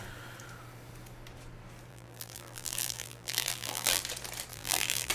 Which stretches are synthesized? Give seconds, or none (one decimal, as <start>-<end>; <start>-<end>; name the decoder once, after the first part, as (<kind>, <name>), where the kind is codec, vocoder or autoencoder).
1.9-4.0 (vocoder, BigVGAN v2); 4.5-5.1